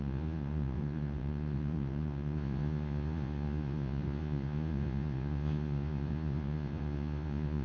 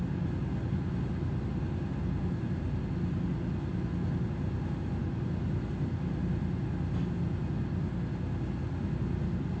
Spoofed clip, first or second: first